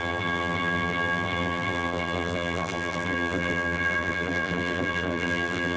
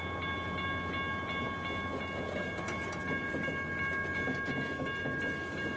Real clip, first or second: second